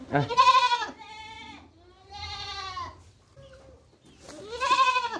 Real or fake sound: real